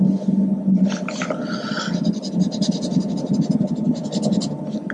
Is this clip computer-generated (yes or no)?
no